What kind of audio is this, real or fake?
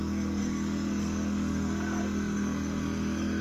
fake